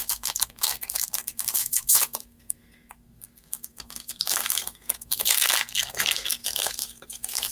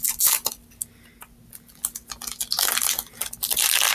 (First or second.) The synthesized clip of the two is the first